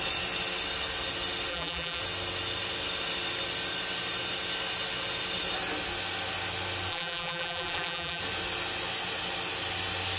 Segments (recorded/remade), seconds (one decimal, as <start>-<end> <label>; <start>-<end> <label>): 0.0-1.5 recorded; 1.5-2.0 remade; 2.0-6.9 recorded; 6.9-8.2 remade; 8.2-10.2 recorded